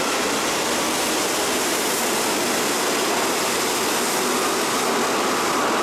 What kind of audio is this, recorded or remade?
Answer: recorded